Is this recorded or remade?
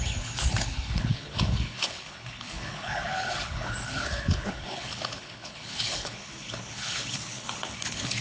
remade